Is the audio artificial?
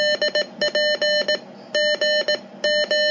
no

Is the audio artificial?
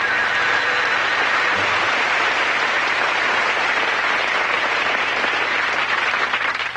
yes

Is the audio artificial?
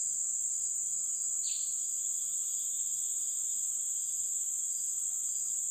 no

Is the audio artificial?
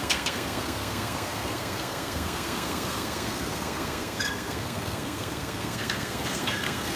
yes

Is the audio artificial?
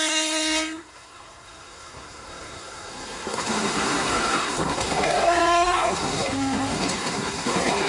yes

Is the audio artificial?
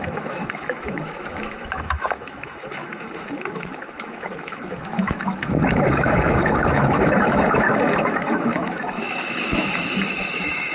yes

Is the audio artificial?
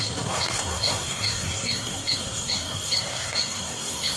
yes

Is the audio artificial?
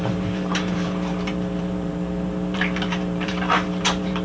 yes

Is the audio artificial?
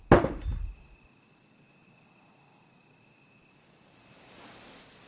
no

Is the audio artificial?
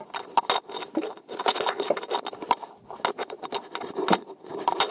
no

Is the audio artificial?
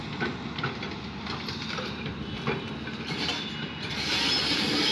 no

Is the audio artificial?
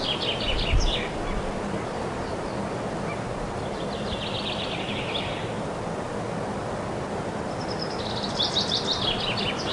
no